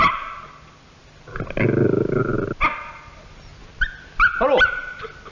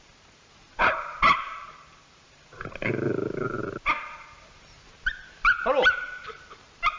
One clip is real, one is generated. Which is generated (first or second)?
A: second